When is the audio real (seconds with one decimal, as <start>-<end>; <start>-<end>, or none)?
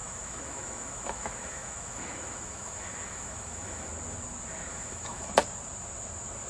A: 3.9-4.7; 5.3-6.5